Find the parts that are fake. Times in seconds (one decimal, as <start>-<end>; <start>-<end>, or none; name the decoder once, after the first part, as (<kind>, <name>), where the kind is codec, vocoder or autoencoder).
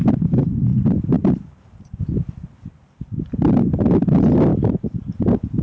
0.7-2.0 (vocoder, BigVGAN v2); 4.5-5.1